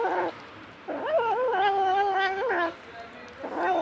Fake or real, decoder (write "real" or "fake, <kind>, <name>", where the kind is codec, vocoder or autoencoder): real